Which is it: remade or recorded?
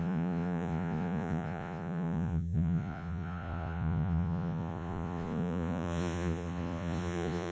remade